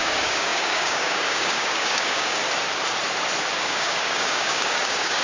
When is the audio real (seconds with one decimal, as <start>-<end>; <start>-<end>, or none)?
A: 2.4-3.5